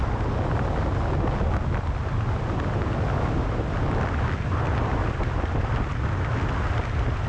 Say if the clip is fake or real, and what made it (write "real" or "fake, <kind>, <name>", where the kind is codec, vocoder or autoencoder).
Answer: real